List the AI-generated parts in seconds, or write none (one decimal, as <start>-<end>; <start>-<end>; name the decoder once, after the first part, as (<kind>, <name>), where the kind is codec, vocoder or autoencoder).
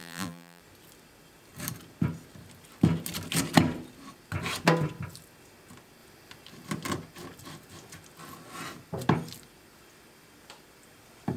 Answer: 0.0-0.6 (vocoder, BigVGAN v2)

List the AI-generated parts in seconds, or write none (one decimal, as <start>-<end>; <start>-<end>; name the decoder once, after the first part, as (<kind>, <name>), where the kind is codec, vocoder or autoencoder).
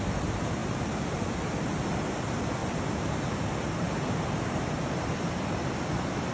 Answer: 0.6-1.3 (vocoder, BigVGAN v2); 2.6-4.0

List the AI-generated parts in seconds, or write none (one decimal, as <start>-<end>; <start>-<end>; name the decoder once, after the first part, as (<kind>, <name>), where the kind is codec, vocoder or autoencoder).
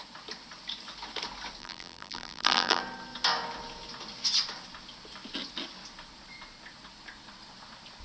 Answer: 1.6-2.8 (vocoder, BigVGAN v2)